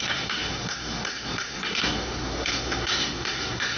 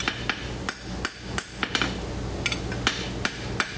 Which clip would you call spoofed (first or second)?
first